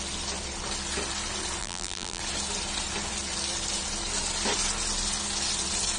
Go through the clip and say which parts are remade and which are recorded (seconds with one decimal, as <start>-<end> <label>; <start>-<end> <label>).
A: 0.0-1.6 recorded; 1.6-2.2 remade; 2.2-6.0 recorded